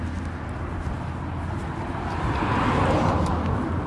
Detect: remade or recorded recorded